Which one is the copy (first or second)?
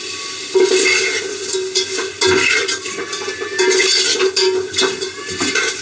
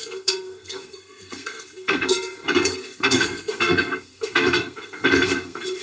second